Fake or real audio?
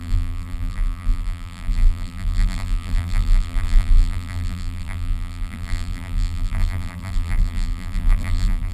fake